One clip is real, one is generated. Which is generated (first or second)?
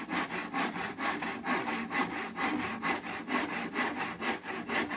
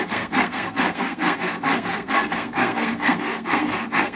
second